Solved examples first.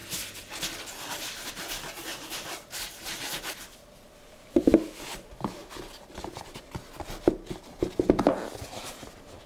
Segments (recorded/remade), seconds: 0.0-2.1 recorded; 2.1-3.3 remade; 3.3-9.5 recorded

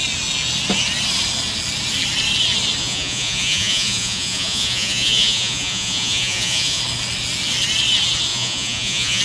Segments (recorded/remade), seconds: 0.0-2.8 recorded; 2.8-6.8 remade; 6.8-8.3 recorded; 8.3-9.2 remade

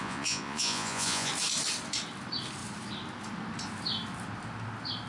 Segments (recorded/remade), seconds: 0.0-1.3 remade; 1.3-5.1 recorded

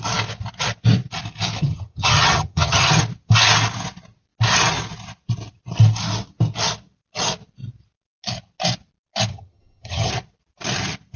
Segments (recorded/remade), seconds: 0.0-1.6 recorded; 1.6-3.0 remade; 3.0-9.3 recorded; 9.3-10.1 remade; 10.1-11.2 recorded

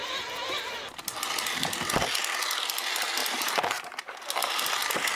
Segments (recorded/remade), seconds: 0.0-3.2 recorded; 3.2-4.0 remade; 4.0-5.1 recorded

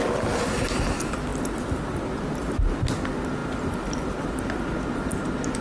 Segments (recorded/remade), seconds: 0.0-5.6 recorded

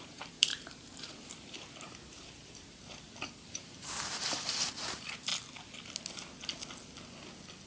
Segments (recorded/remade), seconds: 0.0-5.3 remade; 5.3-7.7 recorded

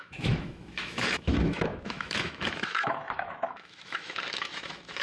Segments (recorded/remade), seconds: 0.0-5.0 remade